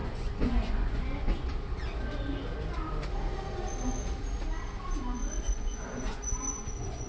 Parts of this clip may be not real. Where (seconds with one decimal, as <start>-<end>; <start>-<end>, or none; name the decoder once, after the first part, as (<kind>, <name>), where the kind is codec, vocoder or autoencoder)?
0.0-1.5 (vocoder, Vocos); 5.4-7.1